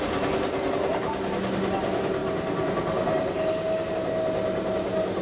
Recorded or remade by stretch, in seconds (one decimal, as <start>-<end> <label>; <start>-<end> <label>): 0.0-5.2 recorded